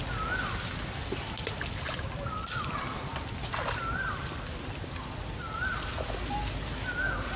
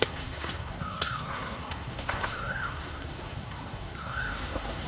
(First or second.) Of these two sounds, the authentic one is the first